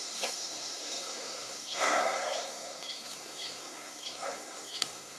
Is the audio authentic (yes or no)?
no